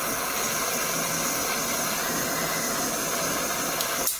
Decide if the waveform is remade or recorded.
recorded